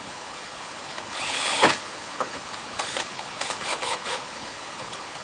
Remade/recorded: remade